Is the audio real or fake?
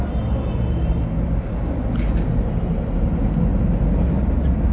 real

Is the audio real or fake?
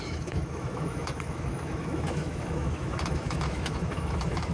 fake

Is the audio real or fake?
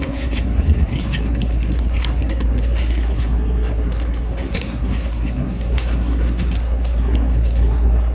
fake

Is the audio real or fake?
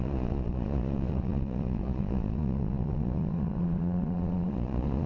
fake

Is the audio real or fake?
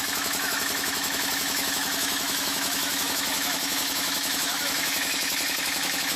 fake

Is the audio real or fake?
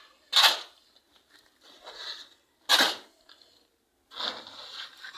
real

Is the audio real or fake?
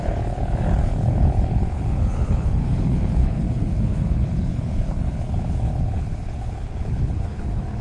fake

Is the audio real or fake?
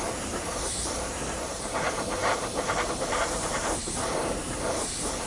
fake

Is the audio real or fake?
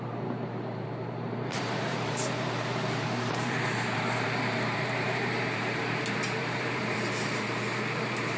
fake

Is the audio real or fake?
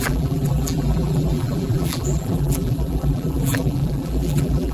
fake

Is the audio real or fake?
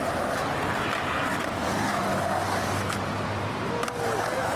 real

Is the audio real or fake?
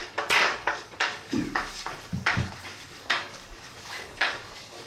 fake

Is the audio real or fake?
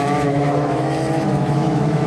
fake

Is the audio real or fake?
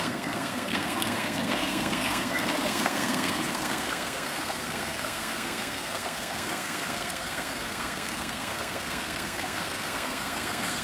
fake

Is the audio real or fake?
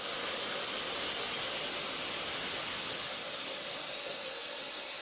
real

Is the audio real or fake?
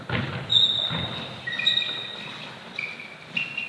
real